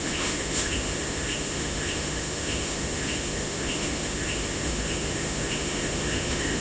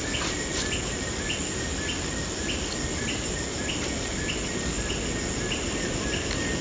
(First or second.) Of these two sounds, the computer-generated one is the first